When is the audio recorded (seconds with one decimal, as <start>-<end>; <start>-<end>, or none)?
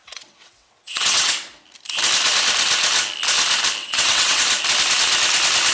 1.3-3.8; 4.4-5.7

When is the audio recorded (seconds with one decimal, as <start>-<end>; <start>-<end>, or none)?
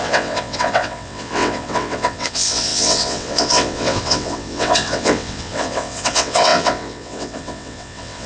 none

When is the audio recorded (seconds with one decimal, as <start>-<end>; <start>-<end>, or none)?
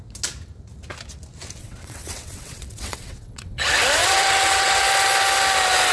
0.0-1.6; 3.6-4.0; 4.8-5.9